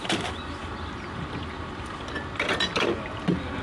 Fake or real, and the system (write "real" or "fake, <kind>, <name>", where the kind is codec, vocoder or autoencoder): real